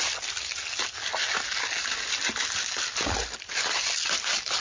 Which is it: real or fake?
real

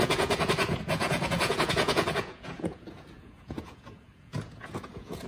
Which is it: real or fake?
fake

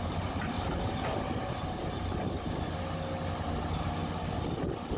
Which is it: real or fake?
real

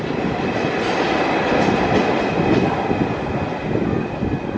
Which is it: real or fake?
real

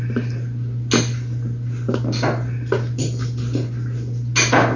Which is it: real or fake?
real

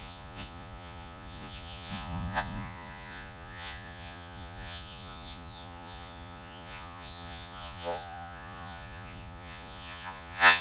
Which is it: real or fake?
fake